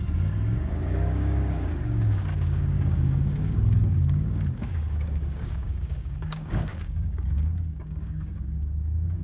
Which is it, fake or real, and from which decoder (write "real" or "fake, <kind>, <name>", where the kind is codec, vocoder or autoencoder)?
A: fake, codec, DAC